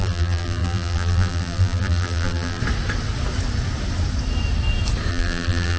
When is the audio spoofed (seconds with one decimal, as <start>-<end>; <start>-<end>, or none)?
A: 0.0-2.6; 5.1-5.8